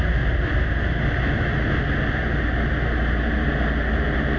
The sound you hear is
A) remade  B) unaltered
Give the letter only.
B